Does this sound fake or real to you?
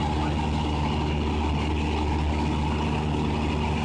real